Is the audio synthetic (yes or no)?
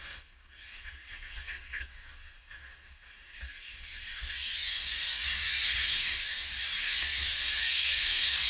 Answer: yes